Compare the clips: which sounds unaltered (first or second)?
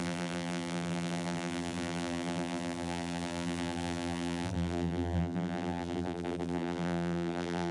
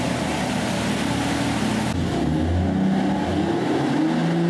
second